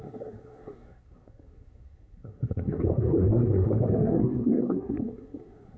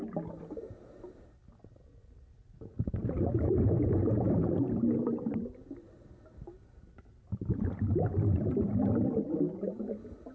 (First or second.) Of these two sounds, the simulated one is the first